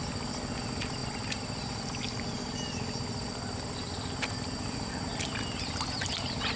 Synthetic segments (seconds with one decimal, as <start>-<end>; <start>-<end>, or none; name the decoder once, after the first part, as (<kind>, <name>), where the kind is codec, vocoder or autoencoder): none